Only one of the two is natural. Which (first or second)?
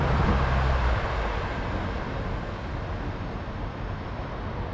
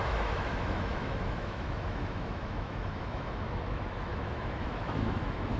first